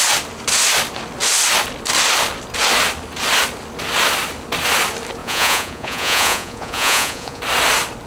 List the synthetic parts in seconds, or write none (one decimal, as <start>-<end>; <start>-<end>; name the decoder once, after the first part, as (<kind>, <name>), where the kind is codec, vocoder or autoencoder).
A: 5.2-7.4 (vocoder, Vocos)